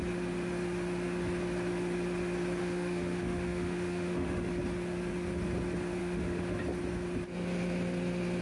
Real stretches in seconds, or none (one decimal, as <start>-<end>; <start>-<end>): 0.0-2.6; 4.6-6.0; 6.6-8.4

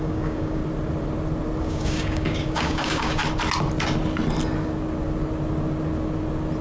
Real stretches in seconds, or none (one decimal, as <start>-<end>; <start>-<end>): 0.6-1.6; 3.2-6.6

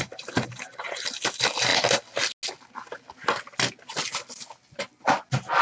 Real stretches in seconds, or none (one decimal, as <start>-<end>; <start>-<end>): 0.0-5.6

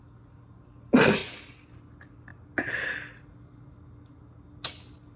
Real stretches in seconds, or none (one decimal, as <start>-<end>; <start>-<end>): 0.0-5.2

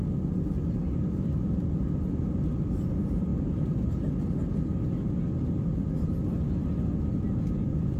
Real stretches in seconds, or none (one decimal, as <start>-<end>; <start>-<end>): 0.0-8.0

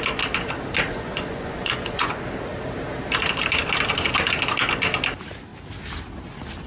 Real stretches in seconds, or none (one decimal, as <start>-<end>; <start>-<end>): 0.0-0.9; 2.2-6.7

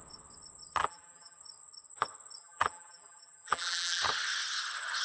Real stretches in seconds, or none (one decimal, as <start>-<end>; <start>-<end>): 0.0-0.8; 1.4-2.4; 4.0-5.0